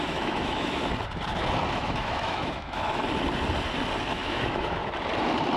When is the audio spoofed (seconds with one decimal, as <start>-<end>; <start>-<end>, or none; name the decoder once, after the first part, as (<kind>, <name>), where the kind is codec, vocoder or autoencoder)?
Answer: 0.0-0.9 (autoencoder, DAC-VAE); 1.7-3.0; 4.1-4.8